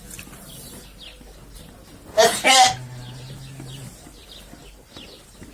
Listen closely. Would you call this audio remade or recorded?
recorded